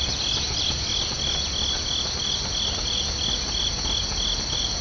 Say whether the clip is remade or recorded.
recorded